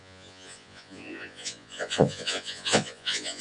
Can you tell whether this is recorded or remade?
remade